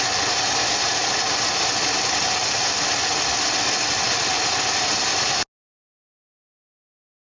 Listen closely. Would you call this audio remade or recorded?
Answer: recorded